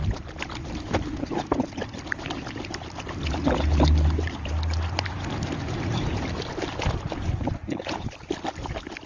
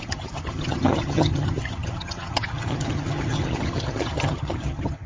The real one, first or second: first